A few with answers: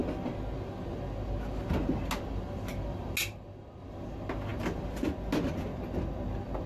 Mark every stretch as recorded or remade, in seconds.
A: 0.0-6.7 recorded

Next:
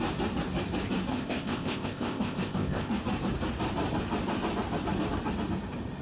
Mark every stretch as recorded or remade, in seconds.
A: 0.0-1.1 recorded; 1.1-2.9 remade; 2.9-6.0 recorded

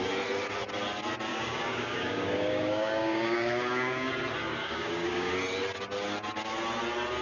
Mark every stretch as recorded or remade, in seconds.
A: 0.0-1.3 recorded; 1.3-4.1 remade; 4.1-4.6 recorded; 4.6-5.3 remade; 5.3-7.2 recorded